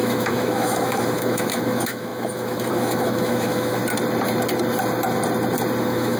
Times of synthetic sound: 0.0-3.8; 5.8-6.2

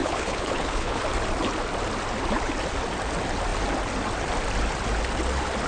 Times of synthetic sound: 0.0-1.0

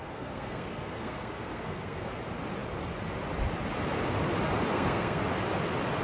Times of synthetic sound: 0.0-2.1; 4.7-5.2